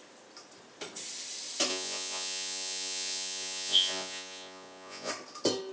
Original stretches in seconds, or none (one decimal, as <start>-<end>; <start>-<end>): 0.0-1.7; 5.1-5.7